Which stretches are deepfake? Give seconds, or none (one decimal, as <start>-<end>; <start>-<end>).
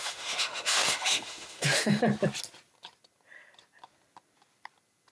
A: 0.0-2.0